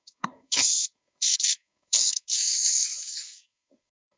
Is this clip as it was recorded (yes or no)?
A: no